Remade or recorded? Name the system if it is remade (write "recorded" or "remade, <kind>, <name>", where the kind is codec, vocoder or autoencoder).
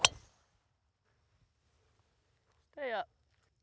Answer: recorded